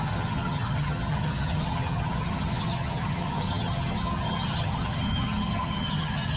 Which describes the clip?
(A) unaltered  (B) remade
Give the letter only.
B